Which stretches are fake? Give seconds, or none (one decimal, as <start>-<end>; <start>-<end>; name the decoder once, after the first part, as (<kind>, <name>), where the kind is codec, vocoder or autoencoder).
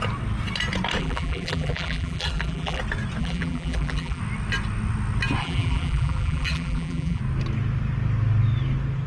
1.0-2.8 (vocoder, BigVGAN v2); 3.2-4.2; 5.4-7.2